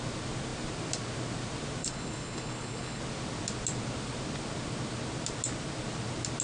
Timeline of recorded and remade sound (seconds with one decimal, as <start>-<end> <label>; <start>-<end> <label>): 0.0-1.8 recorded; 1.8-3.0 remade; 3.0-6.4 recorded